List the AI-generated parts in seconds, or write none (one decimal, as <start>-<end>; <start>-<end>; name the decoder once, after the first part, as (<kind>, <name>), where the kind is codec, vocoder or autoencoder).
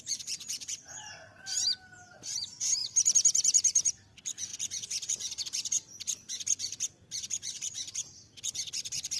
0.0-1.3 (vocoder, BigVGAN v2); 2.3-2.8; 3.9-4.5; 5.4-9.2